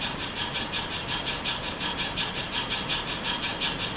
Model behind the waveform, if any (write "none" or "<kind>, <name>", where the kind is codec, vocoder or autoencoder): none